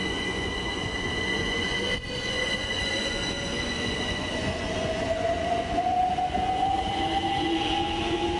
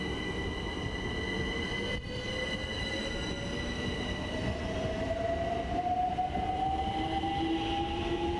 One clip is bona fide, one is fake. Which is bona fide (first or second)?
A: second